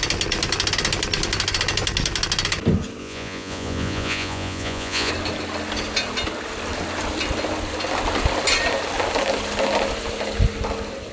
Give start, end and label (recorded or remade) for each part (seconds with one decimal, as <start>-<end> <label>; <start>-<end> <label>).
0.0-3.0 recorded; 3.0-5.1 remade; 5.1-11.1 recorded